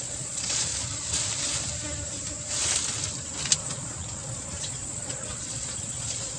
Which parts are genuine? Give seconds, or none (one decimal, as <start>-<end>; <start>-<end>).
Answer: 0.7-3.6